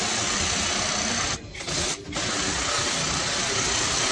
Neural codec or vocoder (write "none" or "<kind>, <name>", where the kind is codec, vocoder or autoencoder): none